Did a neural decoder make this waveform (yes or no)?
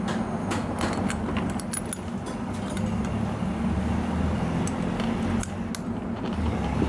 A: no